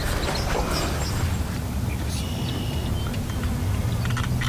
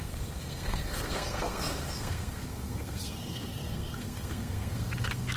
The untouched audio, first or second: first